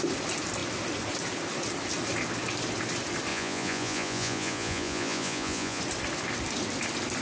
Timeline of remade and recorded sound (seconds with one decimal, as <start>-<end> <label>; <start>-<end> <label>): 0.0-3.3 recorded; 3.3-5.8 remade; 5.8-7.2 recorded